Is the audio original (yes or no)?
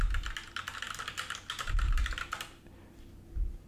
yes